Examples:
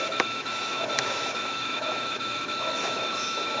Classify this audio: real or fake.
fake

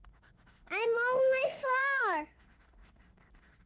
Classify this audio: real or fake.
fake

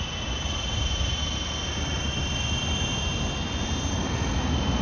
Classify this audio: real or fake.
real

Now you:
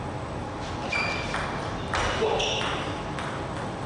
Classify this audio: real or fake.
real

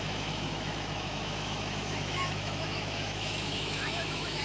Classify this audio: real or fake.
fake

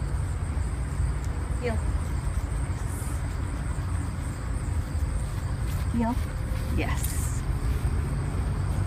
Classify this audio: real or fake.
real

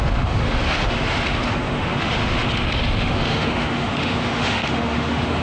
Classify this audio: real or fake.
fake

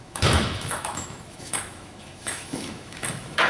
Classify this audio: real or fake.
fake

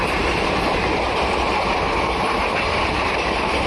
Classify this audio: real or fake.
real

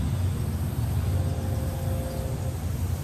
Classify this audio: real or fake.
real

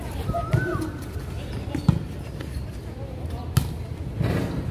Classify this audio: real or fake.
real